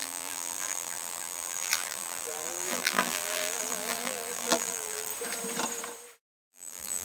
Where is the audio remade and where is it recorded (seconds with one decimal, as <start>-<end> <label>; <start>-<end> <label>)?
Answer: 0.0-5.1 remade; 5.1-6.3 recorded; 6.3-7.0 remade